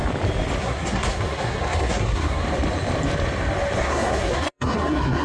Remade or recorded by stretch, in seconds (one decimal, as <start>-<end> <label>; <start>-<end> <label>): 0.0-0.6 recorded; 0.6-2.4 remade; 2.4-3.8 recorded; 3.8-5.2 remade